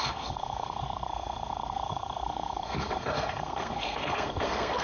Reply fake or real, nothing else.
fake